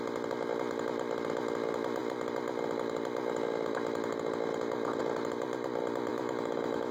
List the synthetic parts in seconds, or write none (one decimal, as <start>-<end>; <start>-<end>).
6.1-6.9